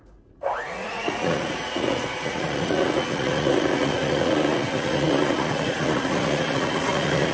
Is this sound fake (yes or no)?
yes